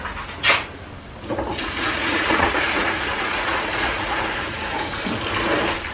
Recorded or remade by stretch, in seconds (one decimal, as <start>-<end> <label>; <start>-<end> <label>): 0.0-1.5 recorded; 1.5-5.0 remade; 5.0-5.9 recorded